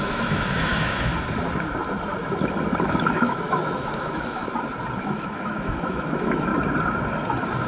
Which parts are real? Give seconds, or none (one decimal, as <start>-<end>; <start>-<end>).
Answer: 1.1-2.9; 4.4-5.0; 6.5-7.7